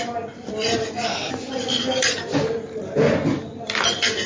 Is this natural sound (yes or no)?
yes